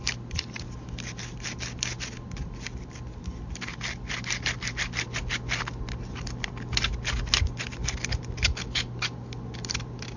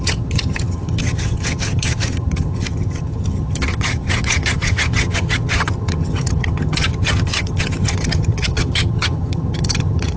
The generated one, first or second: second